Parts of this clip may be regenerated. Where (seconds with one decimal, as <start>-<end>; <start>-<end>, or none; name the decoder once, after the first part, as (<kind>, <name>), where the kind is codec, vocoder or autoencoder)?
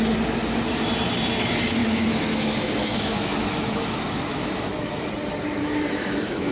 1.8-5.1 (autoencoder, DAC-VAE); 5.6-6.5